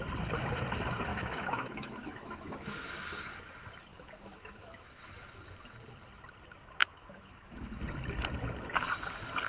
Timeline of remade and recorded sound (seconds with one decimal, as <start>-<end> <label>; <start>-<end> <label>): 0.0-1.1 recorded; 1.1-2.5 remade; 2.5-3.9 recorded; 3.9-5.1 remade; 5.1-6.8 recorded; 6.8-7.8 remade; 7.8-9.5 recorded